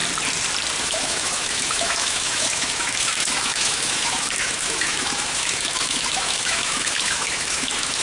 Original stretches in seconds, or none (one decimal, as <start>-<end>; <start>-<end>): 0.0-0.8